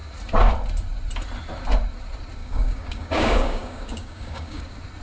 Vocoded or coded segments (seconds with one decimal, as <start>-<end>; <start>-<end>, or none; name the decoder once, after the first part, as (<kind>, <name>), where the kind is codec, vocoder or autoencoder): 2.4-4.6 (codec, DAC)